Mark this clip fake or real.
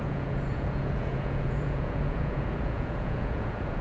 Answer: fake